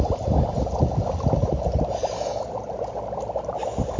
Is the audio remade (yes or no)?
no